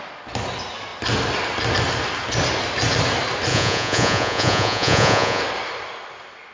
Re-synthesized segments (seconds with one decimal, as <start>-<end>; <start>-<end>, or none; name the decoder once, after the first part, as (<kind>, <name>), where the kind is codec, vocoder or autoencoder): 3.5-5.4 (vocoder, Vocos)